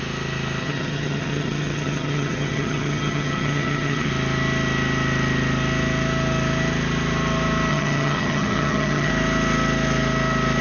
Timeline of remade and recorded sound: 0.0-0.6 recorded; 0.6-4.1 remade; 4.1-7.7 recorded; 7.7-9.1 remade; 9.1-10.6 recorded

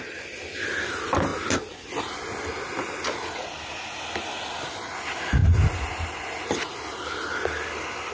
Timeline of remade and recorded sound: 0.0-8.1 recorded

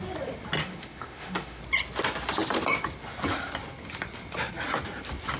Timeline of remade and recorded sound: 0.0-0.6 recorded; 0.6-1.6 remade; 1.6-5.4 recorded

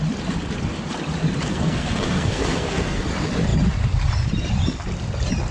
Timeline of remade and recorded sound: 0.0-1.5 recorded; 1.5-3.0 remade; 3.0-5.5 recorded

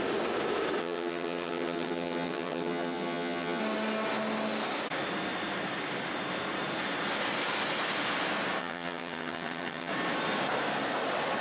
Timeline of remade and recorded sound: 0.0-0.8 recorded; 0.8-3.6 remade; 3.6-8.6 recorded; 8.6-9.9 remade; 9.9-11.4 recorded

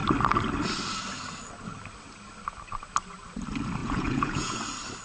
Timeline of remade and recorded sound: 0.0-3.8 recorded; 3.8-4.6 remade; 4.6-5.0 recorded

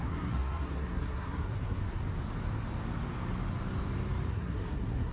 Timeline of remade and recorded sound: 0.0-1.8 remade; 1.8-4.3 recorded; 4.3-5.1 remade